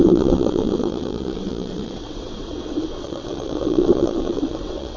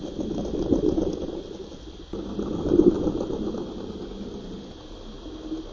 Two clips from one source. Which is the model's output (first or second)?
first